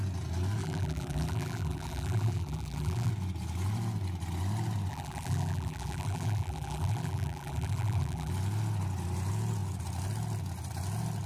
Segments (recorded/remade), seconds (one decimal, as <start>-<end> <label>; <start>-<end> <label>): 0.0-0.6 recorded; 0.6-3.1 remade; 3.1-4.9 recorded; 4.9-8.3 remade; 8.3-11.3 recorded